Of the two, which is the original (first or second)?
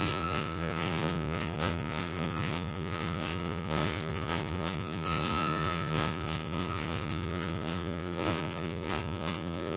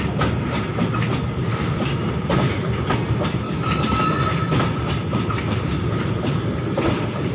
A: second